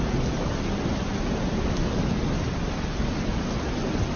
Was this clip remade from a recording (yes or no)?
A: no